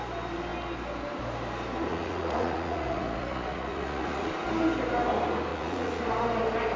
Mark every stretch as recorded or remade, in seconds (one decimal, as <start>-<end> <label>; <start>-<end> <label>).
0.0-1.9 recorded; 1.9-4.3 remade; 4.3-5.5 recorded; 5.5-6.0 remade; 6.0-6.8 recorded